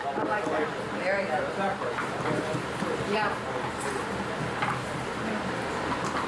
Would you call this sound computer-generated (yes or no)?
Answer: no